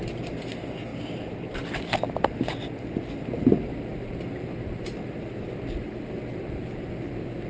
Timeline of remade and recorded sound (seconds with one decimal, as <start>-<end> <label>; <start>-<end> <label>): 0.0-0.9 recorded; 0.9-1.8 remade; 1.8-3.7 recorded; 3.7-4.5 remade; 4.5-7.5 recorded